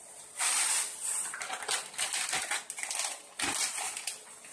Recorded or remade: recorded